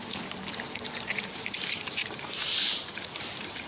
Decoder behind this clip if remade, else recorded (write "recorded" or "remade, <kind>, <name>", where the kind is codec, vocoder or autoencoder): remade, vocoder, BigVGAN v2